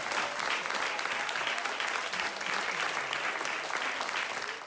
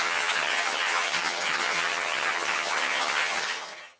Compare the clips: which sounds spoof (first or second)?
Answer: second